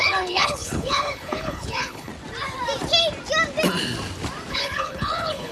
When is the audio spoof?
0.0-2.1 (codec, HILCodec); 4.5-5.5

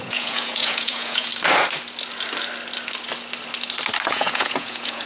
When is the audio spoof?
0.0-1.3 (vocoder, Vocos); 4.1-5.1

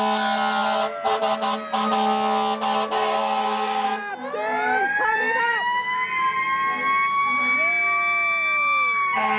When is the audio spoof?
3.2-4.1 (codec, DAC)

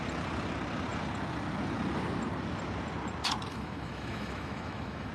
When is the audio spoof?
3.5-5.1 (autoencoder, DAC-VAE)

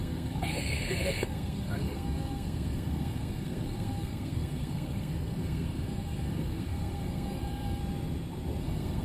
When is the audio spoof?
0.0-7.8 (codec, SNAC); 8.6-9.0

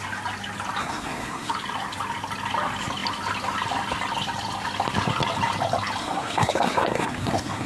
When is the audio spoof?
0.8-1.5 (codec, SNAC); 6.0-7.7